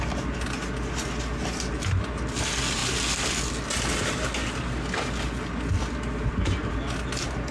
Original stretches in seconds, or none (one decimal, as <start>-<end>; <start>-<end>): 0.0-7.5